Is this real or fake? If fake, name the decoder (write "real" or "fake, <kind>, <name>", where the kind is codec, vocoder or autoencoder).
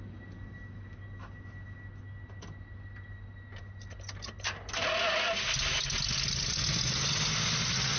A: real